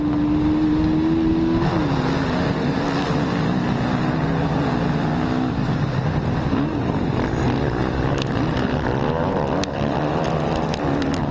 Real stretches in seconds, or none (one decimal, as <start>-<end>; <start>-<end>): 0.0-11.3